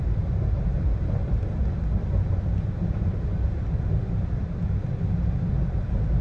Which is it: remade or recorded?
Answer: recorded